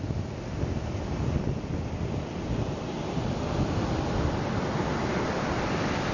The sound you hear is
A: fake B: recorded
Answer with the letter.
B